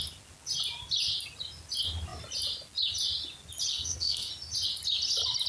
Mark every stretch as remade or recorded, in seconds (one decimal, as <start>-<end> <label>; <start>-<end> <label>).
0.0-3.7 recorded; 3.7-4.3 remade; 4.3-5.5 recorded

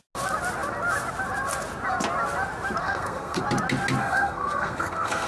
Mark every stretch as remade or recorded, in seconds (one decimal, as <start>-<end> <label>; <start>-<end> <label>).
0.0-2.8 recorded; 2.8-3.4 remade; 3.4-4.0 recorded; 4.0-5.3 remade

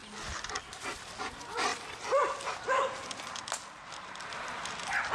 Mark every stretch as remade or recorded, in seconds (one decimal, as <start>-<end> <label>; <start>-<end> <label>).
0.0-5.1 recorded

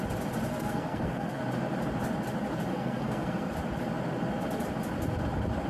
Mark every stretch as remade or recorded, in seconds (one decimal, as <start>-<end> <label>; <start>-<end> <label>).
0.0-0.5 recorded; 0.5-1.4 remade; 1.4-2.7 recorded; 2.7-3.5 remade; 3.5-5.7 recorded

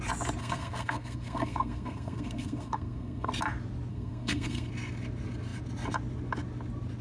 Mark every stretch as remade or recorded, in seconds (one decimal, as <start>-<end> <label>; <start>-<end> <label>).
0.0-0.4 recorded; 0.4-3.3 remade; 3.3-3.9 recorded; 3.9-4.7 remade; 4.7-7.0 recorded

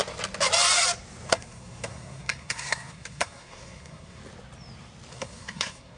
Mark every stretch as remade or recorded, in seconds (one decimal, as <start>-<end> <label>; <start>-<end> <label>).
0.0-1.3 recorded; 1.3-4.2 remade; 4.2-5.1 recorded; 5.1-6.0 remade